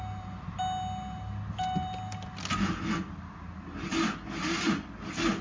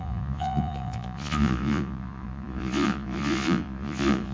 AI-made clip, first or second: second